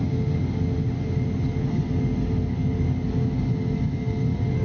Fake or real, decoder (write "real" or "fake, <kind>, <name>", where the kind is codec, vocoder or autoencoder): real